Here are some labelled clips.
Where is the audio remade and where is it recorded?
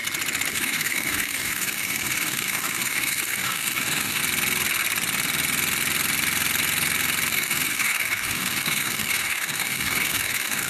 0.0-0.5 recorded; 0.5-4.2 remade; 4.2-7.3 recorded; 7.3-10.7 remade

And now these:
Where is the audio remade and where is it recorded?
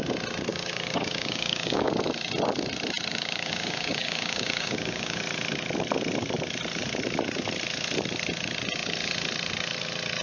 0.0-0.5 recorded; 0.5-1.9 remade; 1.9-3.1 recorded; 3.1-5.2 remade; 5.2-10.2 recorded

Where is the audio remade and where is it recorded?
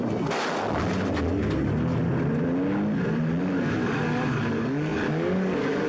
0.0-3.4 recorded; 3.4-5.9 remade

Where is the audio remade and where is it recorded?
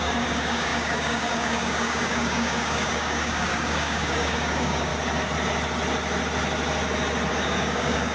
0.0-4.9 remade; 4.9-7.3 recorded; 7.3-8.1 remade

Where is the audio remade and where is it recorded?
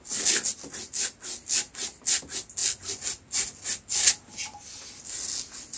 0.0-5.8 recorded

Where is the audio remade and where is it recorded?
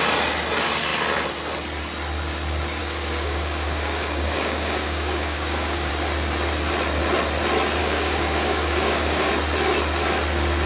0.0-2.8 recorded; 2.8-5.9 remade; 5.9-7.8 recorded; 7.8-9.3 remade; 9.3-10.7 recorded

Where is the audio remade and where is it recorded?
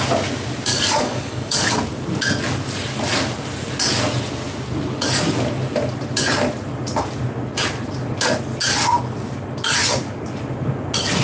0.0-0.7 recorded; 0.7-1.7 remade; 1.7-11.2 recorded